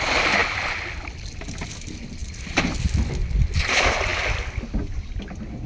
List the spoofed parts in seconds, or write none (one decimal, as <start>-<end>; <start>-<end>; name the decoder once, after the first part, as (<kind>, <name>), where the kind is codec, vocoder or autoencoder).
none